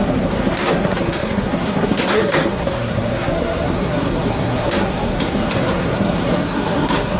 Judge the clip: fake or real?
fake